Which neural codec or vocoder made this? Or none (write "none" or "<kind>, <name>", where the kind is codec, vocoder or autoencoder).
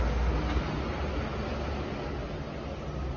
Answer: none